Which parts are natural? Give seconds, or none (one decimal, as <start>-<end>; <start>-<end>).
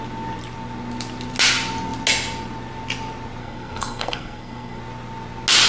0.0-3.4; 4.8-5.7